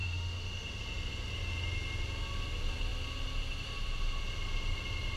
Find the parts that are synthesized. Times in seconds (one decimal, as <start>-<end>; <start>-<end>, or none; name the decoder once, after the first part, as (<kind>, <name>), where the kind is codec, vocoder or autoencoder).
0.0-0.8 (autoencoder, DAC-VAE)